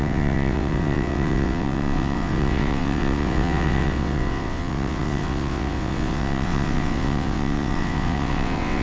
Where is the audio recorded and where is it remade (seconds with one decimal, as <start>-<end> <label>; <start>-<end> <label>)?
0.0-8.8 remade